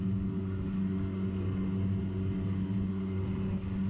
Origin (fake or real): real